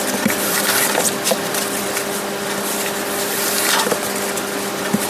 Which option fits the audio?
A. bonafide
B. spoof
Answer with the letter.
B